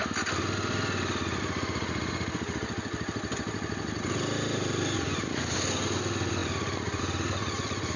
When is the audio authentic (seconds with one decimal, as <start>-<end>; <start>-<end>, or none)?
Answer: 0.0-6.4; 7.0-8.0